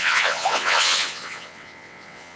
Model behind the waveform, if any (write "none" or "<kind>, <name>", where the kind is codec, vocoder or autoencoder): vocoder, WaveNeXt